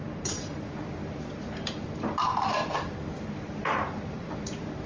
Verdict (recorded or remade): remade